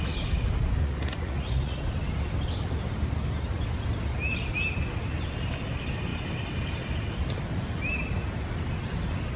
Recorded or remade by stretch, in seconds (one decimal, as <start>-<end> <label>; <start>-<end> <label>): 0.0-0.8 recorded; 0.8-1.8 remade; 1.8-9.4 recorded